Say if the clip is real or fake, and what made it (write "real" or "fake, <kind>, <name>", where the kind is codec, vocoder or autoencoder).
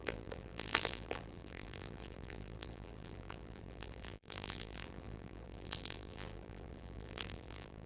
fake, vocoder, BigVGAN v2